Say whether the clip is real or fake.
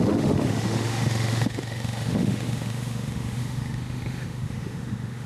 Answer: fake